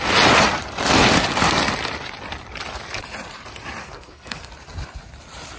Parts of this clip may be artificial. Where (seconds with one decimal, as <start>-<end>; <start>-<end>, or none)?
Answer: 3.8-4.5